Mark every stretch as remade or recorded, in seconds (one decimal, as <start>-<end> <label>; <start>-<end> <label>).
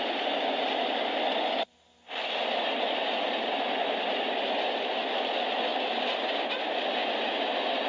0.0-7.9 recorded